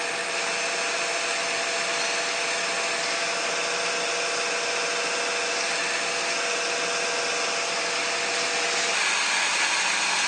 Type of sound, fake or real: real